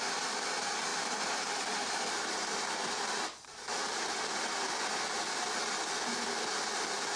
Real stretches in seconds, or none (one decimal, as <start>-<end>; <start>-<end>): 0.0-0.9; 5.2-7.2